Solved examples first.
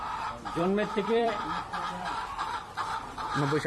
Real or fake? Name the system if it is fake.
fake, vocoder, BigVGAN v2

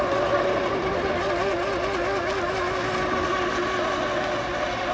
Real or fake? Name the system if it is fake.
real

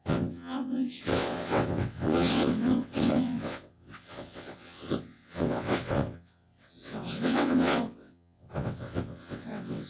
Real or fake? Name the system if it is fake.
fake, vocoder, WaveNeXt